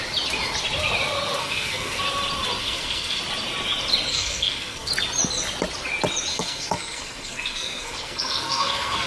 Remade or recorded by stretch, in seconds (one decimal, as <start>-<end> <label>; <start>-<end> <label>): 0.0-1.4 recorded; 1.4-2.0 remade; 2.0-2.6 recorded; 2.6-3.2 remade; 3.2-4.1 recorded; 4.1-4.9 remade; 4.9-6.3 recorded; 6.3-9.1 remade